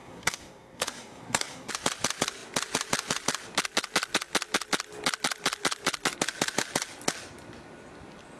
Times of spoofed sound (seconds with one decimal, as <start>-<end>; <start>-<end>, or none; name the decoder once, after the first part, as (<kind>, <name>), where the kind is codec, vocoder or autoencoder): 0.0-1.7 (codec, SNAC)